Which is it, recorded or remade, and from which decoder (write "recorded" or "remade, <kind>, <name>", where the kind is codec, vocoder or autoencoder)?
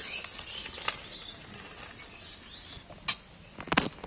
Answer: recorded